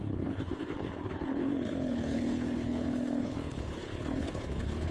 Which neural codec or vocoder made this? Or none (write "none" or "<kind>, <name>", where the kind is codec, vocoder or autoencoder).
codec, HILCodec